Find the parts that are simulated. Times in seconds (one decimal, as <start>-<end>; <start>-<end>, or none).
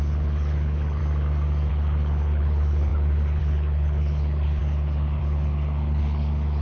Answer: 0.0-1.0; 1.7-6.6